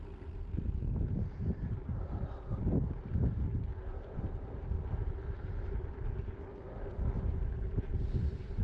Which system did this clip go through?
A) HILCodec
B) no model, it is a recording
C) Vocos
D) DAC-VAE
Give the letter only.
B